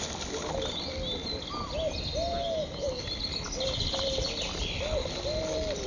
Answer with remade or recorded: recorded